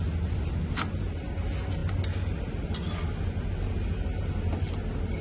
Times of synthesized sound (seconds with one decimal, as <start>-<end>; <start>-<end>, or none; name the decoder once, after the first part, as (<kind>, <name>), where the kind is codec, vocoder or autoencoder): none